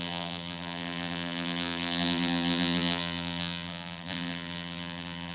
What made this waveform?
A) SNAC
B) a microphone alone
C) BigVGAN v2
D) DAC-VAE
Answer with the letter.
C